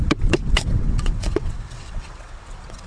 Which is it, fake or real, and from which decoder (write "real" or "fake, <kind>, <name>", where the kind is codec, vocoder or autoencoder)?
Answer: fake, vocoder, WaveNeXt